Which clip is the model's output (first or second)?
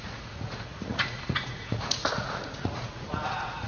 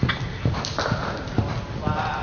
first